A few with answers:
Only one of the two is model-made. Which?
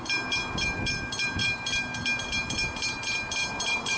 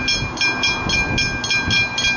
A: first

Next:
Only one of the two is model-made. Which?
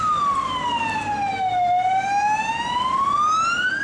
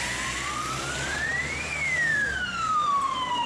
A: second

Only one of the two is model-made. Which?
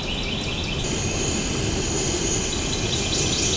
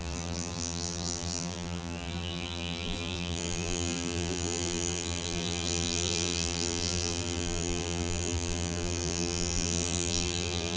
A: second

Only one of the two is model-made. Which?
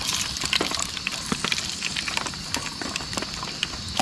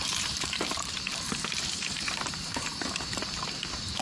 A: second